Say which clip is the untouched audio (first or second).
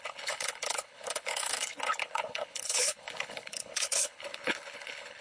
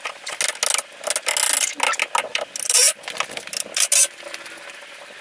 second